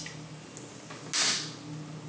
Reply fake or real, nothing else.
real